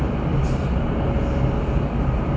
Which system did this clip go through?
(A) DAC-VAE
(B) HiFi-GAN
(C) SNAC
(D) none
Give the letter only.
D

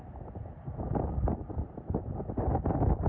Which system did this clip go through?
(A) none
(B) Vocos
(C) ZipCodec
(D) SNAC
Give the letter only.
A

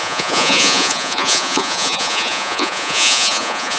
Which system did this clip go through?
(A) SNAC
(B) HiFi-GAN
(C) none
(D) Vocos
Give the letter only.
D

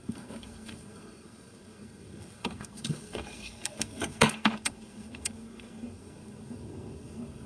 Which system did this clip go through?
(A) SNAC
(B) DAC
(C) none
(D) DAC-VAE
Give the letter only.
A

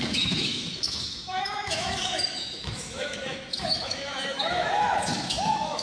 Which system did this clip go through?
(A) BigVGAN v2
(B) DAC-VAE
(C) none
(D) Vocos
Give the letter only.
B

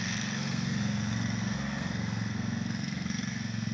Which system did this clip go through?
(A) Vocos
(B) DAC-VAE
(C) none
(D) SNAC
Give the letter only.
D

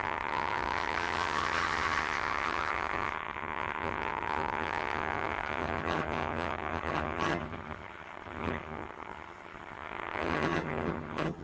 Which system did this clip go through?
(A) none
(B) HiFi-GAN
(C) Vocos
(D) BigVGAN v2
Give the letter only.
B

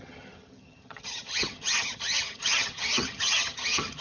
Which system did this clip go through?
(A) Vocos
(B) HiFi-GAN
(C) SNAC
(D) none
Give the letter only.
B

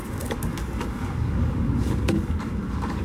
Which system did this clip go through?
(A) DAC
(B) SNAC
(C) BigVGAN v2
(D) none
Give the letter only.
A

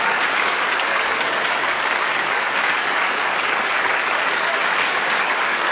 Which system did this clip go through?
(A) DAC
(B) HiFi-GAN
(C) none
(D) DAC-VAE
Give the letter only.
A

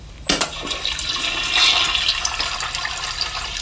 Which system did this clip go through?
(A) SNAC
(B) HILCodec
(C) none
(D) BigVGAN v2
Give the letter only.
C